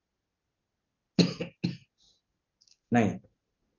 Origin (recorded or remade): recorded